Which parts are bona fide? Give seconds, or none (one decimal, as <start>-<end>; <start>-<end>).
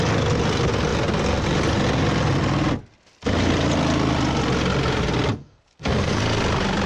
0.0-5.4; 6.2-6.9